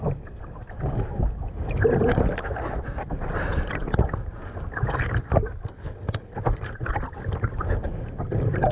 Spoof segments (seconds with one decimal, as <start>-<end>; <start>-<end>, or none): none